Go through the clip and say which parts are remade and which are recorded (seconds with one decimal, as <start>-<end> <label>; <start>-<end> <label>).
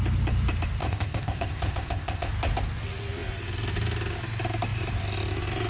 0.0-0.8 recorded; 0.8-2.3 remade; 2.3-5.7 recorded